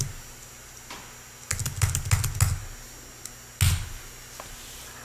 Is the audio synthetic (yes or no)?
no